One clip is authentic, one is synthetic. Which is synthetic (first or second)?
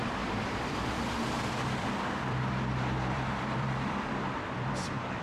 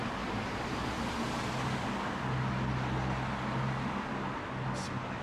first